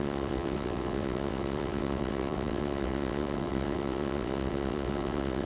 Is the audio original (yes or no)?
no